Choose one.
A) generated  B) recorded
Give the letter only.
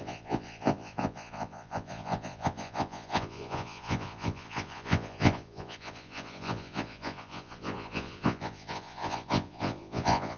A